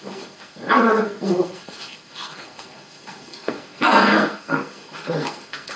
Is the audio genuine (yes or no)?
no